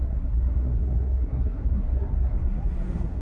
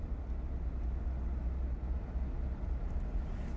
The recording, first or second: second